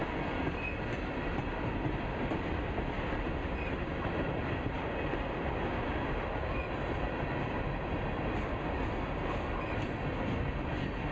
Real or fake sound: real